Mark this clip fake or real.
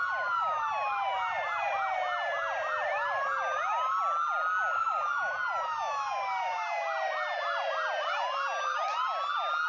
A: real